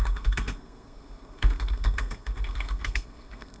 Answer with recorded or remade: remade